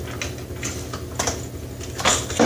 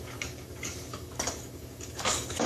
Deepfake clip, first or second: second